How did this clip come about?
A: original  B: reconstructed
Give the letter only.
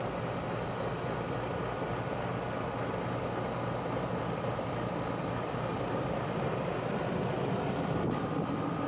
A